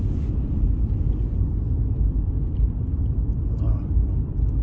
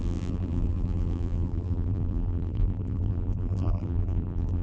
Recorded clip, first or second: first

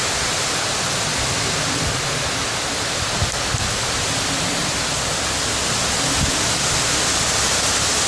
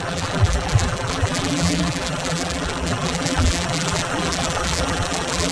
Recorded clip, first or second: first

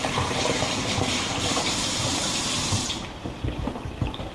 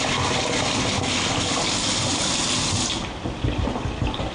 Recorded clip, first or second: second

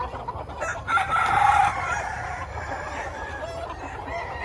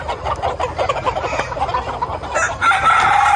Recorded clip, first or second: second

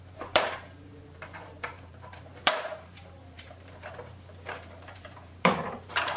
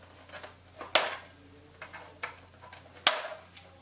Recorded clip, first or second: second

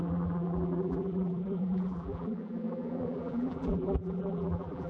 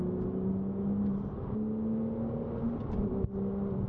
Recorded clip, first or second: second